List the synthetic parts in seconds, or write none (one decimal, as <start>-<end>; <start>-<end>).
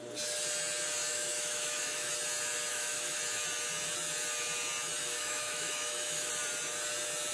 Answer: 1.1-2.1; 2.7-3.2; 5.0-6.3